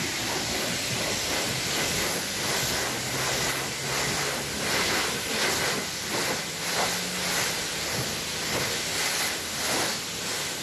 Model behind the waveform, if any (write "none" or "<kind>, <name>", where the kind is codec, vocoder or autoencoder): none